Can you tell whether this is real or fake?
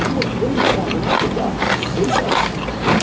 fake